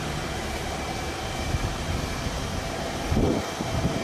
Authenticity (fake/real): real